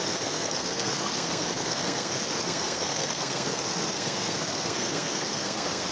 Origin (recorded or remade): remade